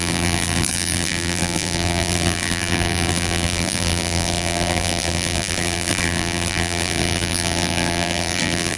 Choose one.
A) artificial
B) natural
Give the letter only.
A